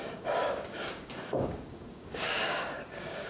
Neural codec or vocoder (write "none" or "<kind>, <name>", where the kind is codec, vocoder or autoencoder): codec, DAC